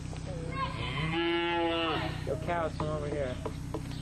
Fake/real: real